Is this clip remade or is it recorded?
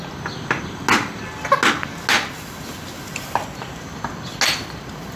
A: recorded